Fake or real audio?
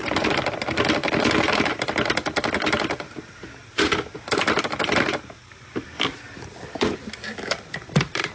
fake